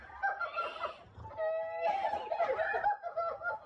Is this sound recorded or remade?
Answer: recorded